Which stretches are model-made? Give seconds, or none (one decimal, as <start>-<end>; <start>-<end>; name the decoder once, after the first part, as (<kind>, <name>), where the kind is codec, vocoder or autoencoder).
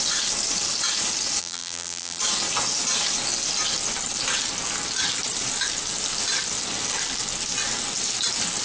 1.4-2.2 (vocoder, BigVGAN v2)